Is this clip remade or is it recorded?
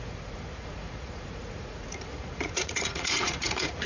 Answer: remade